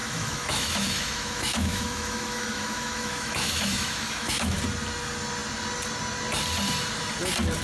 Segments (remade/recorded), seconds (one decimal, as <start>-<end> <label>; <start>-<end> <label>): 0.0-4.6 remade; 4.6-7.6 recorded